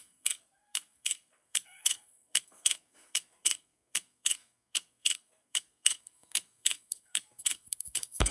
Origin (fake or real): fake